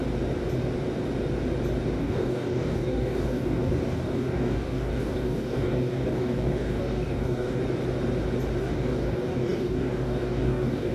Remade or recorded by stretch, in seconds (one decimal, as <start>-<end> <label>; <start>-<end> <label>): 0.0-2.0 recorded; 2.0-7.6 remade; 7.6-8.6 recorded; 8.6-10.9 remade